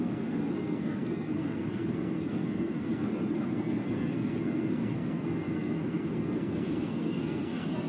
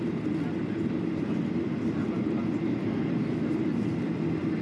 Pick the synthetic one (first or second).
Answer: first